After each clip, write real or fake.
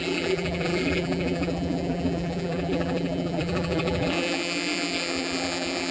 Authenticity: fake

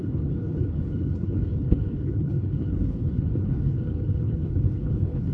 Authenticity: fake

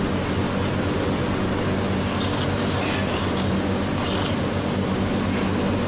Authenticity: real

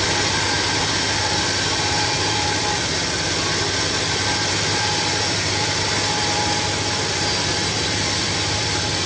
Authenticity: fake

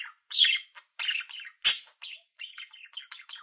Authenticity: real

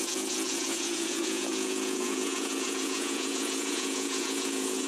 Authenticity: fake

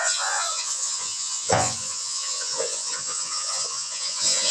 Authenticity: fake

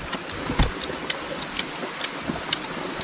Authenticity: real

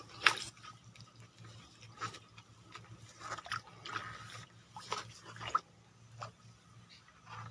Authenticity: real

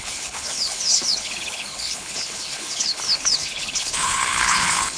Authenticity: fake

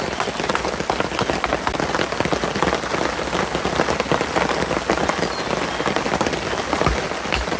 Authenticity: real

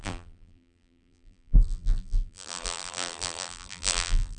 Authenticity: fake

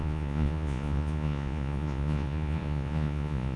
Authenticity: fake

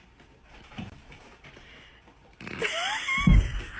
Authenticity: fake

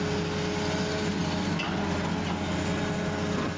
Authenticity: real